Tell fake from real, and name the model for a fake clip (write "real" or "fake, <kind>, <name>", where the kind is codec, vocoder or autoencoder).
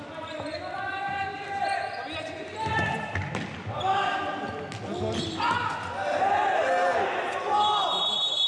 real